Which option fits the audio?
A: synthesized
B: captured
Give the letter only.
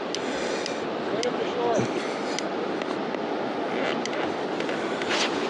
B